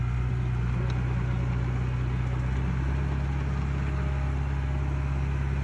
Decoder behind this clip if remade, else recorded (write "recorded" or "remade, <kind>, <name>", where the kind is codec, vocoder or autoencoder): recorded